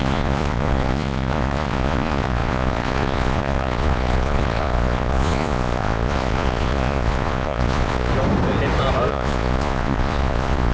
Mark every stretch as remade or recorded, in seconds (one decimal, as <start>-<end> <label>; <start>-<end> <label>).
0.0-8.1 remade; 8.1-9.1 recorded; 9.1-10.7 remade